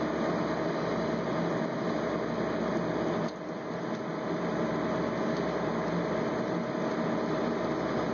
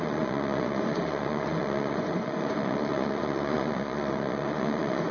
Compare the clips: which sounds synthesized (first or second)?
second